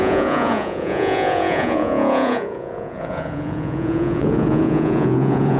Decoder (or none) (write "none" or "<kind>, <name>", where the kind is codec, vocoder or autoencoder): vocoder, Vocos